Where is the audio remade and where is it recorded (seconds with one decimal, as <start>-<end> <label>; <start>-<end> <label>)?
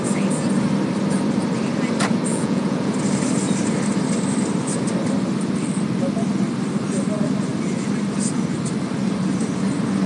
0.0-2.3 recorded; 2.3-2.9 remade; 2.9-10.1 recorded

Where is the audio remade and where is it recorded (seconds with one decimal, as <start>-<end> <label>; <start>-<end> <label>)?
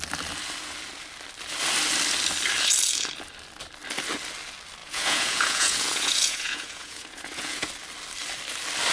0.0-4.8 recorded; 4.8-7.7 remade; 7.7-8.9 recorded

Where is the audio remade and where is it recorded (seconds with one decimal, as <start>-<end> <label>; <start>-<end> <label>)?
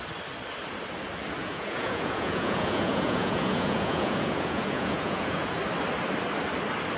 0.0-1.4 recorded; 1.4-5.6 remade; 5.6-7.0 recorded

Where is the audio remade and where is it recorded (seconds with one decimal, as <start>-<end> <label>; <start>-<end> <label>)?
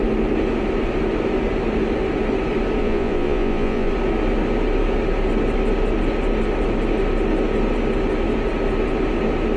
0.0-2.8 recorded; 2.8-3.9 remade; 3.9-9.6 recorded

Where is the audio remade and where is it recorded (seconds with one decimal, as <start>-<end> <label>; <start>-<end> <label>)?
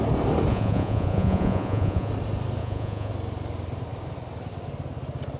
0.0-0.5 recorded; 0.5-2.1 remade; 2.1-2.6 recorded; 2.6-3.1 remade; 3.1-5.4 recorded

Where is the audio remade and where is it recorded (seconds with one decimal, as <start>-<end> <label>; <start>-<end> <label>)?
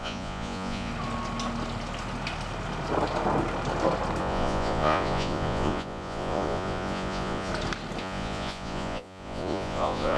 0.0-0.9 remade; 0.9-4.2 recorded; 4.2-7.5 remade; 7.5-8.0 recorded; 8.0-10.2 remade